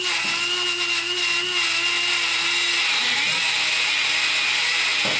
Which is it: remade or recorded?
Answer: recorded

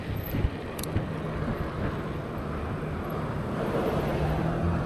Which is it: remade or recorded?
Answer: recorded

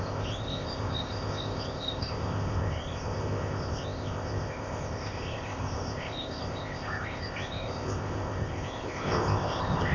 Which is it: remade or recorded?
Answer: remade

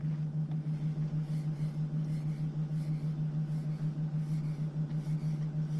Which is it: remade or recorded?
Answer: recorded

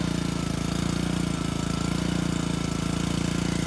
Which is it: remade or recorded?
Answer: recorded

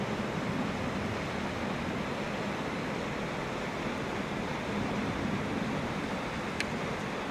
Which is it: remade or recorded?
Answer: recorded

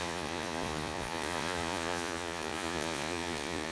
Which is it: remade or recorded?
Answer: remade